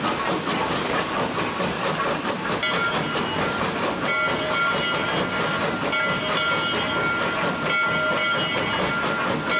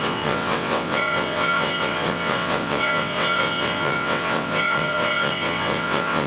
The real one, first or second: first